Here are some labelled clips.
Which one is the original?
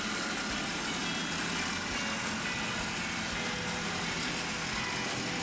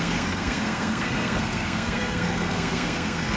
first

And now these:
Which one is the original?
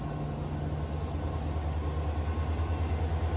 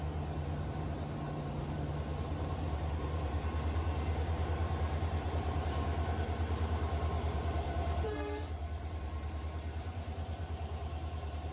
first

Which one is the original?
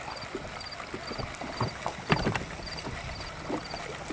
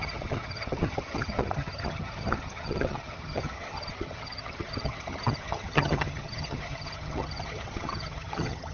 first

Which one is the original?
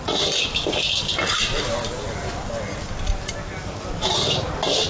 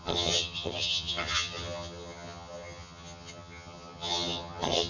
first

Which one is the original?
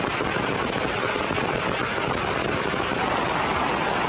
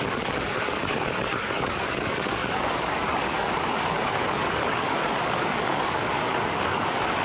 first